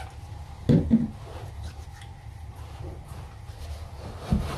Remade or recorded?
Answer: recorded